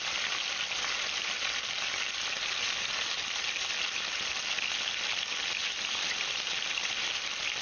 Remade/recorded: recorded